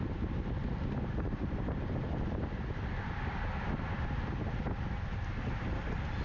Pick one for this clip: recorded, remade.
recorded